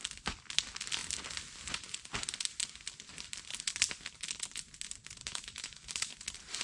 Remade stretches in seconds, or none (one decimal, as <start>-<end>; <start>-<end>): 5.2-6.1

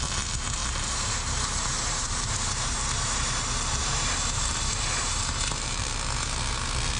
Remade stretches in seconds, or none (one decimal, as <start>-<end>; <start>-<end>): 0.6-2.7; 3.8-5.8